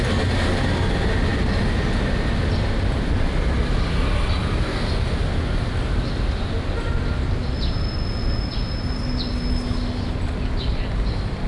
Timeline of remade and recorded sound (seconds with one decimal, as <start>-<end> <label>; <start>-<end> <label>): 0.0-11.5 recorded